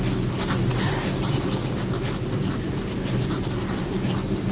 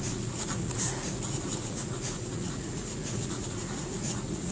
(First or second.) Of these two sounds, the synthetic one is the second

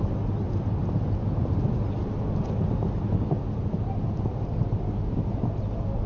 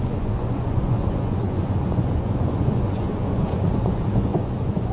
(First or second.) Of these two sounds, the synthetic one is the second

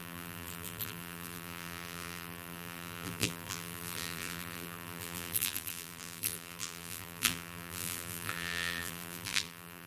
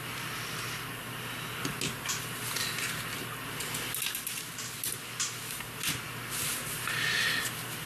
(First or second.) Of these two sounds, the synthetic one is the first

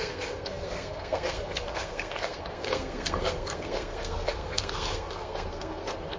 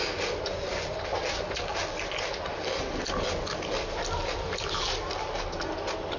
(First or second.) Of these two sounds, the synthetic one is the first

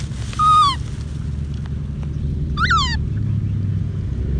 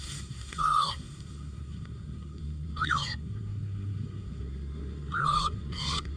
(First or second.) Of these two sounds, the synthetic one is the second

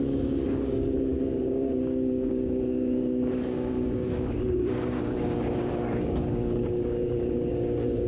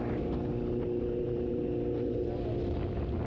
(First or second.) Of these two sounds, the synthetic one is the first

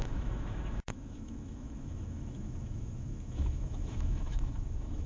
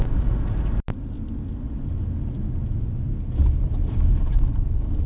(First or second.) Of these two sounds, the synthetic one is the first